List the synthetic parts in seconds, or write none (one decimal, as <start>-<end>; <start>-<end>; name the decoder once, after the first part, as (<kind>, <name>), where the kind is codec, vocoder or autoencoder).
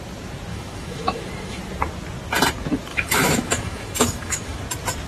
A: 0.5-1.6 (autoencoder, DAC-VAE); 2.9-4.6